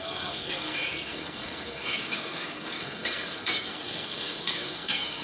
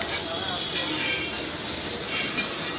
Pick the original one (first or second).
second